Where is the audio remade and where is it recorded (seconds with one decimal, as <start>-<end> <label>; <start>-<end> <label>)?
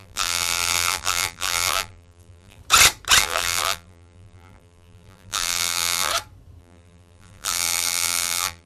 0.0-2.6 remade; 2.6-3.2 recorded; 3.2-6.1 remade; 6.1-6.6 recorded; 6.6-8.7 remade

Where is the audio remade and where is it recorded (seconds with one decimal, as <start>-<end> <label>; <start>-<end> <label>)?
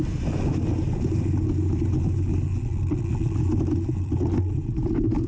0.0-5.3 recorded